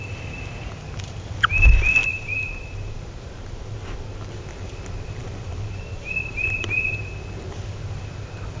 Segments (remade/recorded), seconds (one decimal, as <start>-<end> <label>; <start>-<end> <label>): 0.0-2.0 recorded; 2.0-4.3 remade; 4.3-5.2 recorded; 5.2-6.8 remade; 6.8-8.6 recorded